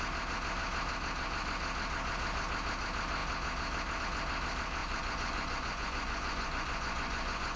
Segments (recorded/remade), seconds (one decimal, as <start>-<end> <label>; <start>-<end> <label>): 0.0-4.8 recorded; 4.8-7.6 remade